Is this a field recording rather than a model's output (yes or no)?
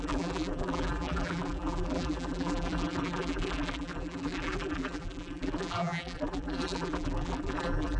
no